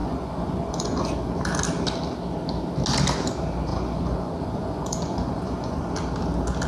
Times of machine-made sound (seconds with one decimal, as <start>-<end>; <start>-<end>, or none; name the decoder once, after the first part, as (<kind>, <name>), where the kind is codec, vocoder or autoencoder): 0.0-1.1 (vocoder, Vocos); 3.7-5.8

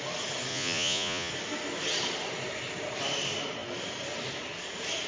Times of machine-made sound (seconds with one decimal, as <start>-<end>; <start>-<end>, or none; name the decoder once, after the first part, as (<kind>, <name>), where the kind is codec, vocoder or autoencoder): 0.5-1.3 (vocoder, Vocos)

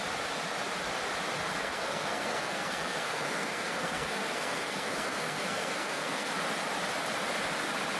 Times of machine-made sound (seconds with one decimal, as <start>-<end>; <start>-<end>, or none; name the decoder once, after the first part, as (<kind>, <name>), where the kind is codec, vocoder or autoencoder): 1.5-6.3 (codec, SNAC)

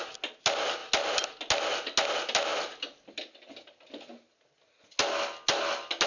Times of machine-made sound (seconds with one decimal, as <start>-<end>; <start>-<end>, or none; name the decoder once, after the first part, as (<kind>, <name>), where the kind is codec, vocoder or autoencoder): none